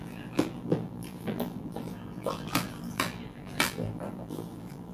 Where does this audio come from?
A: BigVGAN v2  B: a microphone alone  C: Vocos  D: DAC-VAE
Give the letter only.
A